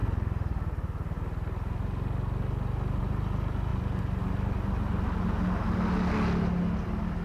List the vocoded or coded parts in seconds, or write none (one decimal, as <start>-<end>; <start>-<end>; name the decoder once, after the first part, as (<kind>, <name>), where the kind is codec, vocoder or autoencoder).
none